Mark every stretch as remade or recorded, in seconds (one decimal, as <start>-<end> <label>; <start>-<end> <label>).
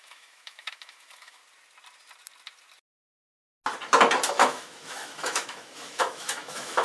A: 0.0-1.4 remade; 1.4-4.3 recorded; 4.3-6.8 remade